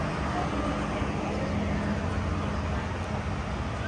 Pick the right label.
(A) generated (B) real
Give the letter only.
B